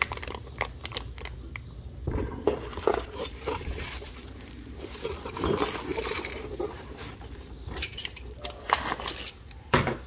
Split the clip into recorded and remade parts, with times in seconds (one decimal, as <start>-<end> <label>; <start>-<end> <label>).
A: 0.0-2.9 recorded; 2.9-5.5 remade; 5.5-5.9 recorded; 5.9-8.5 remade; 8.5-10.1 recorded